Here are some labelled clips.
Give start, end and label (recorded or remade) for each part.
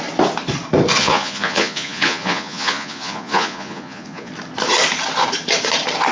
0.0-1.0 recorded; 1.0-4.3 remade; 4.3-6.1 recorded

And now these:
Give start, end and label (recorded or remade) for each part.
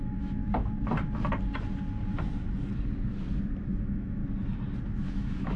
0.0-0.4 remade; 0.4-3.8 recorded; 3.8-4.2 remade; 4.2-5.1 recorded; 5.1-5.6 remade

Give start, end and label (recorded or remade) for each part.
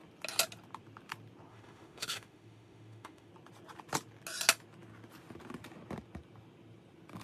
0.0-1.5 recorded; 1.5-3.3 remade; 3.3-7.2 recorded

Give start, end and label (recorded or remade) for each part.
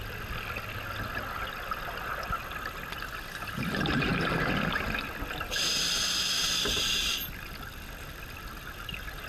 0.0-9.3 recorded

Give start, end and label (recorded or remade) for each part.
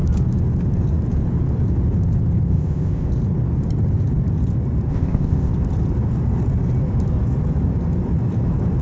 0.0-2.5 recorded; 2.5-3.1 remade; 3.1-4.9 recorded; 4.9-5.5 remade; 5.5-8.8 recorded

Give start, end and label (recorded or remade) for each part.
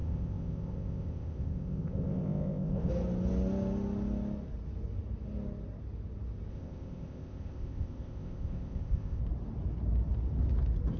0.0-2.9 remade; 2.9-6.5 recorded; 6.5-9.2 remade; 9.2-11.0 recorded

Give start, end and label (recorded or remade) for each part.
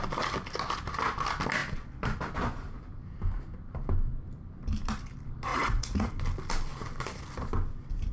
0.0-5.5 recorded; 5.5-6.1 remade; 6.1-8.1 recorded